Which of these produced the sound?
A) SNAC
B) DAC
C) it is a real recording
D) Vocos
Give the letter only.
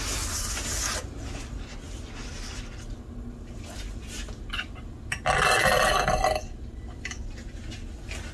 C